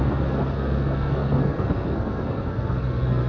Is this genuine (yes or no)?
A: no